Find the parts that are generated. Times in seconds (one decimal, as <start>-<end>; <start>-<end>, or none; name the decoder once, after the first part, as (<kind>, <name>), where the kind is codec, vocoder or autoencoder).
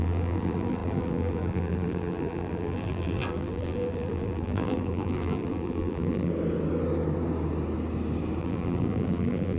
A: 0.0-6.3 (vocoder, BigVGAN v2); 8.4-9.6